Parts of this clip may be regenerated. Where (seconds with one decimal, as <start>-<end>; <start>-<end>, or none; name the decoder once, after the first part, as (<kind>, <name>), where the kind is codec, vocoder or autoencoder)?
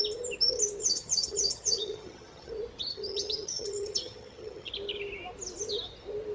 0.8-2.5 (vocoder, HiFi-GAN); 2.9-4.7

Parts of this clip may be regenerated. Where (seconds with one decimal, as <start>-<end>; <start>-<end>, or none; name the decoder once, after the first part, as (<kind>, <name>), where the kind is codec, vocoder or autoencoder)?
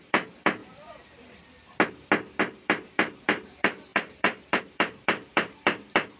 0.0-0.6 (vocoder, BigVGAN v2); 2.4-6.2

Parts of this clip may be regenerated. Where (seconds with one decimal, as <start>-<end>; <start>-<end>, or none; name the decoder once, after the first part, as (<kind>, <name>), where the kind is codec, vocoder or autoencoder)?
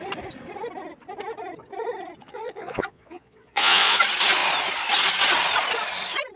2.2-4.0 (vocoder, Vocos)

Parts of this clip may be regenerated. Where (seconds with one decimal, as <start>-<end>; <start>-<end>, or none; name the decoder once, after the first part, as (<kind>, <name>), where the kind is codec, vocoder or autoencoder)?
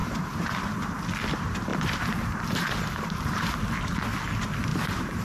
0.0-1.0 (vocoder, BigVGAN v2); 1.7-3.9; 4.7-5.2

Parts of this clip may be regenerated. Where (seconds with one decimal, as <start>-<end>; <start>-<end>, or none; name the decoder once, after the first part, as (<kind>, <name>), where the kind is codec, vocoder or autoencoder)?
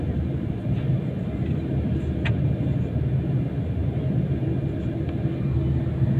none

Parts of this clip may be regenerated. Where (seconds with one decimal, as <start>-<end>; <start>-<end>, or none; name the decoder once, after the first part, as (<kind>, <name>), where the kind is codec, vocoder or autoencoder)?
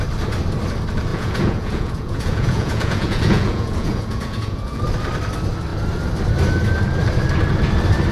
1.1-4.8 (vocoder, Vocos)